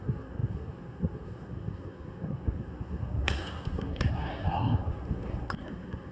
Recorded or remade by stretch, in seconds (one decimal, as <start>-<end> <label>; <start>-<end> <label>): 0.0-6.1 remade